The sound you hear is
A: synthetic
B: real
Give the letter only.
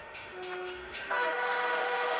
A